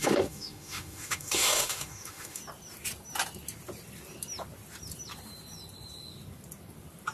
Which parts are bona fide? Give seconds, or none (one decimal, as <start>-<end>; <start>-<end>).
2.4-7.1